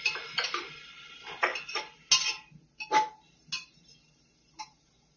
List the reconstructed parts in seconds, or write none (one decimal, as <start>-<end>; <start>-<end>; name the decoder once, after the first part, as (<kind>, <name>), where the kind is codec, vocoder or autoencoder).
none